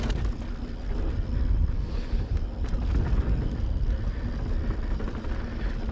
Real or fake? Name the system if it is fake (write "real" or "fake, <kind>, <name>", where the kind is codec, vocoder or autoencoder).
real